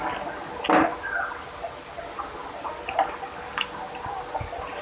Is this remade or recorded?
recorded